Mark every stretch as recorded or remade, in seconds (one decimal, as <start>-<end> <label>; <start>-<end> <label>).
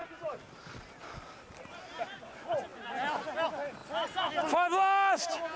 0.0-0.7 remade; 0.7-5.6 recorded